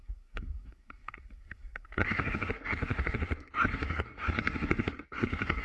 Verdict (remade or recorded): remade